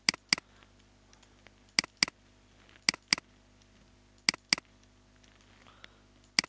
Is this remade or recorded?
recorded